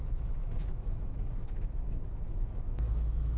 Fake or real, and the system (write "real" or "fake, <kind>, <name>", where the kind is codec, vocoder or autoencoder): fake, autoencoder, DAC-VAE